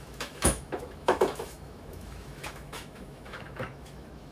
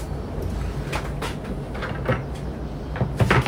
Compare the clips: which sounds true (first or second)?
second